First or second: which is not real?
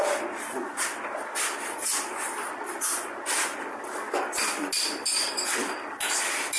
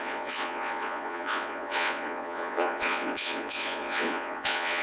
second